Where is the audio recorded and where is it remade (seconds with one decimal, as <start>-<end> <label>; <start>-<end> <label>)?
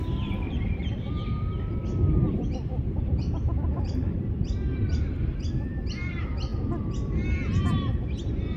0.0-8.6 remade